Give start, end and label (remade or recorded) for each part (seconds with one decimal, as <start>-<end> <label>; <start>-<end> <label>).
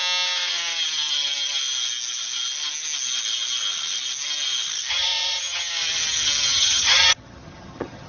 0.0-4.9 recorded; 4.9-5.7 remade; 5.7-6.5 recorded; 6.5-8.1 remade